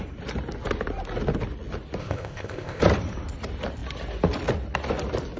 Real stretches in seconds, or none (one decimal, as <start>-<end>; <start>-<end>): 0.0-2.0; 2.8-5.4